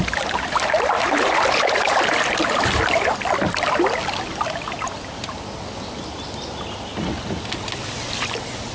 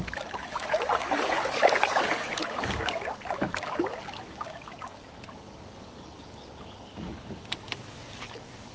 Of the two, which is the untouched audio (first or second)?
first